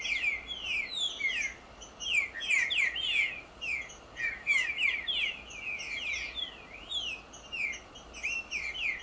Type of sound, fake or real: real